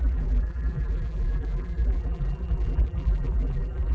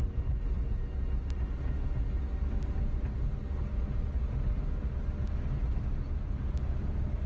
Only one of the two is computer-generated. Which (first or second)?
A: first